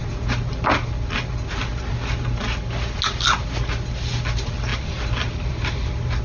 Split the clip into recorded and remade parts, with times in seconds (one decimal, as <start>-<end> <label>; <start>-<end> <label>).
0.0-4.7 recorded; 4.7-6.2 remade